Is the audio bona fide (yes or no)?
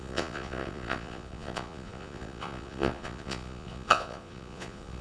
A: no